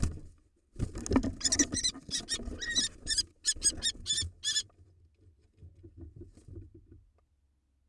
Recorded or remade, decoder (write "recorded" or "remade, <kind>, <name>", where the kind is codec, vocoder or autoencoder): recorded